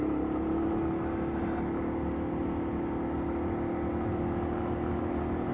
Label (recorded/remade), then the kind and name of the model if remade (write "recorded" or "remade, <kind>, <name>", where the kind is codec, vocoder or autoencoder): recorded